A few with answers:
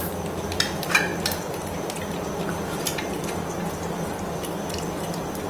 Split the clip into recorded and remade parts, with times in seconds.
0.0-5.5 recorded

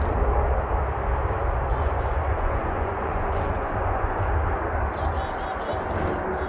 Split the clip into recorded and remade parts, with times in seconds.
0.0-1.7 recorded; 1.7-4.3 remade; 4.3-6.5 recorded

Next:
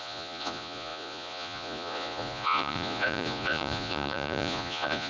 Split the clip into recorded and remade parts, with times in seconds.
0.0-5.1 remade

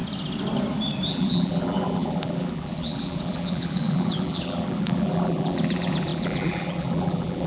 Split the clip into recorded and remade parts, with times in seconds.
0.0-1.1 recorded; 1.1-7.5 remade